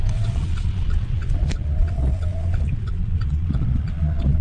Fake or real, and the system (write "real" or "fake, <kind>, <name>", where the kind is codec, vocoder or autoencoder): fake, vocoder, Vocos